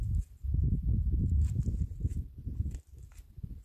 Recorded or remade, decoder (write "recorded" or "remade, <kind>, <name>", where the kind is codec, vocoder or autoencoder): recorded